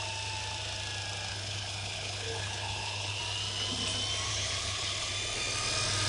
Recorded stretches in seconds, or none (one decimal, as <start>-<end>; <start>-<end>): 0.0-1.3; 3.2-4.3; 5.1-6.1